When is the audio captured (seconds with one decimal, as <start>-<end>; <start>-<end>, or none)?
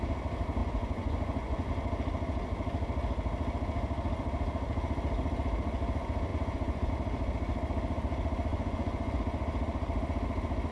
0.0-0.6; 1.7-6.3; 6.9-8.5; 9.2-10.7